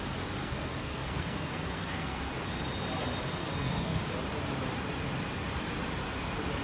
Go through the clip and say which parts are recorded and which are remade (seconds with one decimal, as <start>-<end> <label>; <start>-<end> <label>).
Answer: 0.0-0.4 recorded; 0.4-2.3 remade; 2.3-3.4 recorded; 3.4-4.0 remade; 4.0-6.6 recorded